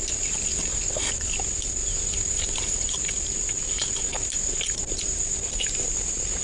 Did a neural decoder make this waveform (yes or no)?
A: no